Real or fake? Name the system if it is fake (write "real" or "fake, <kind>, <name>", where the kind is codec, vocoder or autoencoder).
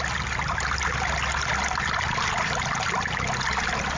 real